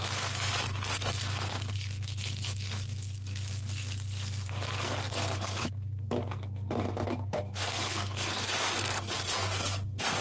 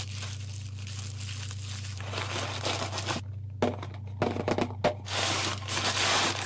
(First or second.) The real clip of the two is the second